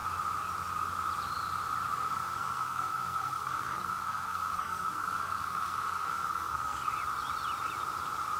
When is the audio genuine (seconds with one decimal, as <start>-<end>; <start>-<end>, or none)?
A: 0.0-1.9; 6.9-8.4

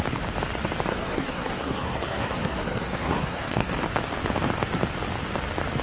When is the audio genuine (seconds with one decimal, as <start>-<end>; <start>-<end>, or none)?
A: 0.0-0.9; 3.7-5.8

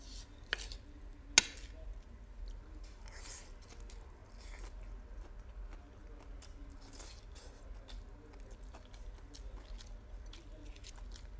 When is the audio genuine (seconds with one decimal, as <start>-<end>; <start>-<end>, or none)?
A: 0.0-11.4

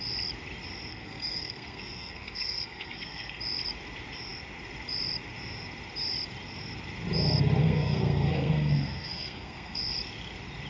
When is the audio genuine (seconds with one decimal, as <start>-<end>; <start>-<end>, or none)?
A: 0.0-0.9; 3.4-7.6; 9.8-10.7

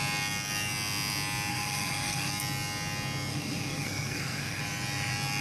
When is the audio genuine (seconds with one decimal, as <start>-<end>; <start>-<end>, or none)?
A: 0.0-1.5; 2.3-3.3; 4.6-5.4

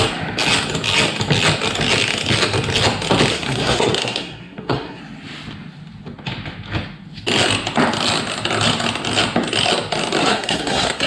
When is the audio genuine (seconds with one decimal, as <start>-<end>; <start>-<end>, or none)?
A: 0.0-3.3; 5.0-10.2

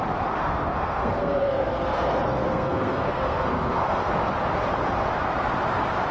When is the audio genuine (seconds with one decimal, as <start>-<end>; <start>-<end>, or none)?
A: 0.0-0.4; 4.1-6.1